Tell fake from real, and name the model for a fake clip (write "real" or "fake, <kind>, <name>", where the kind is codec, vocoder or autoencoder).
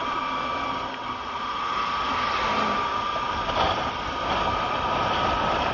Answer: real